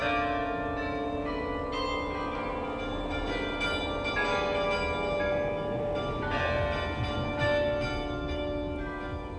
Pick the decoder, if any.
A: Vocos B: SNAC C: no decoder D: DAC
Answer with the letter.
C